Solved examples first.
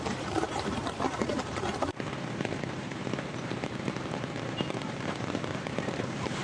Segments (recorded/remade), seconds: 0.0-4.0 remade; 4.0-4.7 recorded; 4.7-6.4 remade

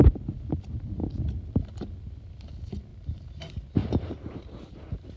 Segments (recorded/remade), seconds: 0.0-2.9 recorded; 2.9-3.4 remade; 3.4-3.8 recorded; 3.8-5.2 remade

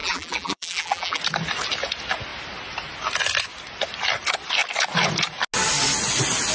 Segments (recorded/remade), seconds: 0.0-1.2 remade; 1.2-6.5 recorded

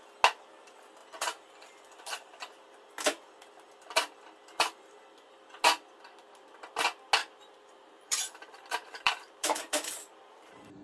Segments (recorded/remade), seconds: 0.0-1.0 recorded; 1.0-2.4 remade; 2.4-7.2 recorded; 7.2-10.8 remade